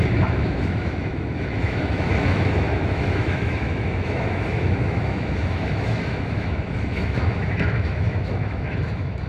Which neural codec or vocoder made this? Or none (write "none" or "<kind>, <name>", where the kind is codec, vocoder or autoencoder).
autoencoder, DAC-VAE